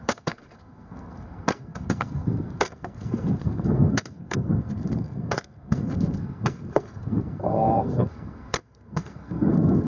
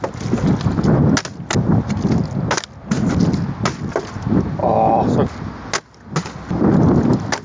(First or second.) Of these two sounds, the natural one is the second